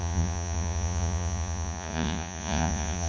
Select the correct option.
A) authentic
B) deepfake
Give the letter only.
B